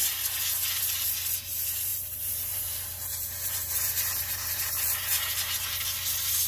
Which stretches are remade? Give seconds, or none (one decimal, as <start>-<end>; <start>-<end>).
1.9-5.5

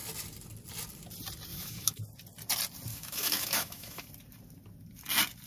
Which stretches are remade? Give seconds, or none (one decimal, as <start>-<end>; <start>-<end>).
1.5-2.0; 2.9-4.1